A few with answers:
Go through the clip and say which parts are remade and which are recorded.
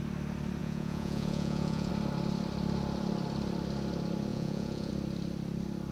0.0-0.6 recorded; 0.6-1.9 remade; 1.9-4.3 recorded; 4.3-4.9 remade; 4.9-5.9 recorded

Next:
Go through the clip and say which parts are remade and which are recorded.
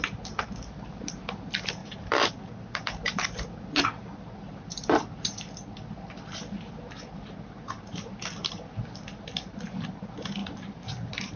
0.0-1.8 recorded; 1.8-2.3 remade; 2.3-10.4 recorded; 10.4-11.4 remade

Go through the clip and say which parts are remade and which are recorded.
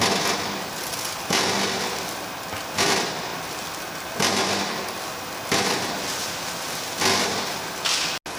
0.0-8.4 recorded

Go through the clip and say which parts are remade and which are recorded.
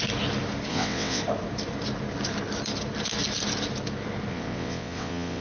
0.0-0.7 recorded; 0.7-1.2 remade; 1.2-4.3 recorded; 4.3-5.4 remade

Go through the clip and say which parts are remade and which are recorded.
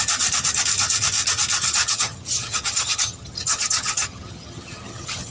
0.0-1.8 recorded; 1.8-5.3 remade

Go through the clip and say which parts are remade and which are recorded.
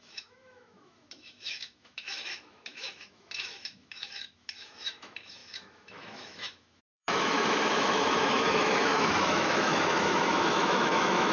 0.0-11.3 remade